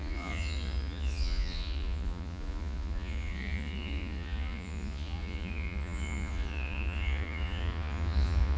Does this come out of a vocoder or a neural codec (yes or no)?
yes